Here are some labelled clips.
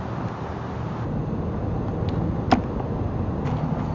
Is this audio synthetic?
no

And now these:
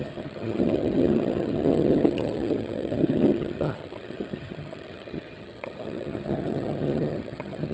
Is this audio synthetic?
yes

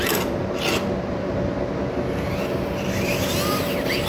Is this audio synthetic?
no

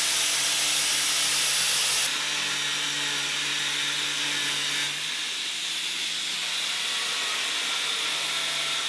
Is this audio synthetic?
no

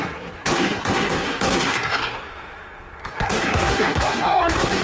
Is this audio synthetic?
yes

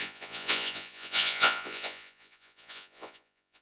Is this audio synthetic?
yes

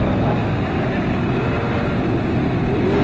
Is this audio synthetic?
no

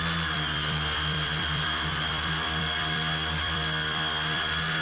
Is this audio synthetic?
yes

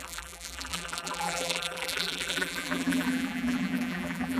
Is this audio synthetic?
yes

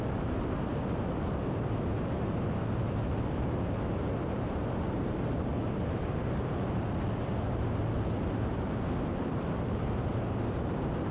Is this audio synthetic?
yes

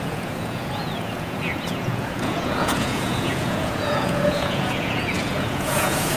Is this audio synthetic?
yes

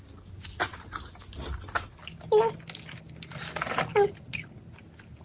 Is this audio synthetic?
no